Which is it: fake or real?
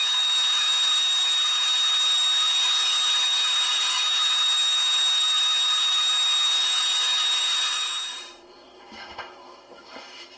fake